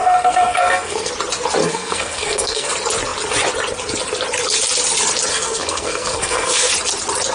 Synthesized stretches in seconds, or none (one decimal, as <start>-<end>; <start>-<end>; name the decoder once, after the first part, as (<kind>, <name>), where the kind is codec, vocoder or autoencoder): 0.0-1.1 (codec, SNAC); 1.6-2.7; 5.3-6.7